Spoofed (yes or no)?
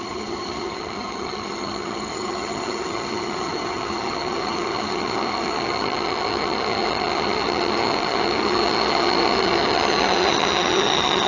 yes